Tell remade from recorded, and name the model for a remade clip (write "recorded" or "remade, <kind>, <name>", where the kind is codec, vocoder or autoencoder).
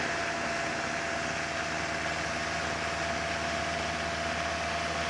recorded